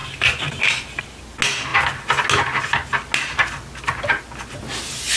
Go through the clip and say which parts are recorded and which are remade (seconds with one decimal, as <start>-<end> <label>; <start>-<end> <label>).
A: 0.0-5.2 recorded